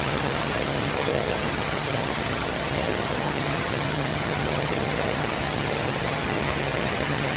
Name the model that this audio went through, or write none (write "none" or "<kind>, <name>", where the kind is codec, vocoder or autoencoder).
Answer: vocoder, HiFi-GAN